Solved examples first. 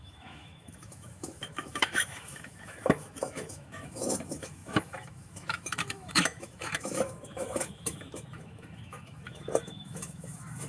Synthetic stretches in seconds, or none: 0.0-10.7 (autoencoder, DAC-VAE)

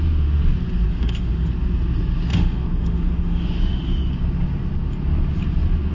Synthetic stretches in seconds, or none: 0.9-1.5 (autoencoder, DAC-VAE); 2.3-4.1

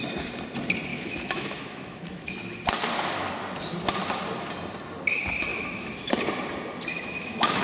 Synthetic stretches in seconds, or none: 0.9-2.3 (autoencoder, DAC-VAE); 5.5-6.1; 6.9-7.6

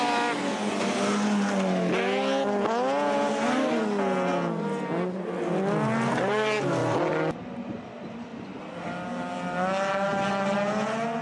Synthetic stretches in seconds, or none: none

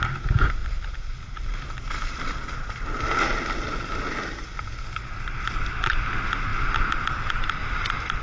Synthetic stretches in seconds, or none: none

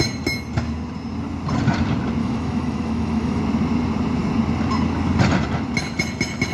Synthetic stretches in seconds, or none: 2.2-3.4 (autoencoder, DAC-VAE)

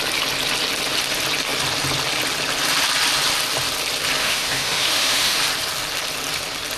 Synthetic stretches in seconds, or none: 4.2-5.4 (autoencoder, DAC-VAE)

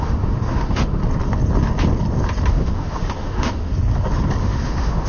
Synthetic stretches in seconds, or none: 0.0-1.0 (autoencoder, DAC-VAE); 2.5-3.7; 4.4-5.1